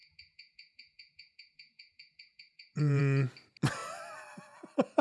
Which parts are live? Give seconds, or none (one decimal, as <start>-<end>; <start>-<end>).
3.0-5.0